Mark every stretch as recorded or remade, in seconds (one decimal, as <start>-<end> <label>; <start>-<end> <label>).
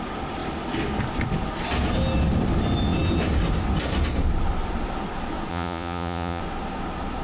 0.0-5.5 recorded; 5.5-6.4 remade; 6.4-7.2 recorded